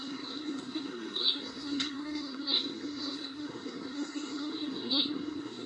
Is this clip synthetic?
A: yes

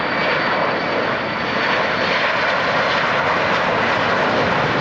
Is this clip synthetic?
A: no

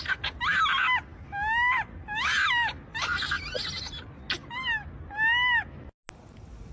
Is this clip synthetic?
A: no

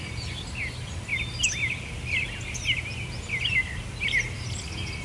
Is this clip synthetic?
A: no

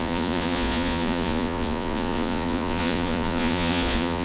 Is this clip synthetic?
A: yes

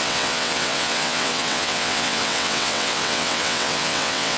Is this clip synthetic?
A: yes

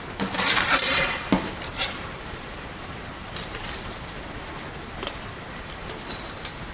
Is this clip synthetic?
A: yes